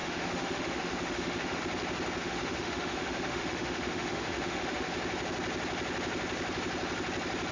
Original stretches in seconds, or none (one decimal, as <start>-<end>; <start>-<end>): 1.6-2.2; 4.9-7.5